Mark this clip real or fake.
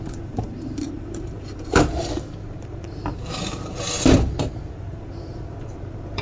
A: fake